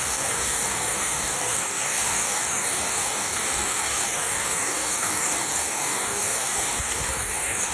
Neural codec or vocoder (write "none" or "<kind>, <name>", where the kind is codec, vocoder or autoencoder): codec, DAC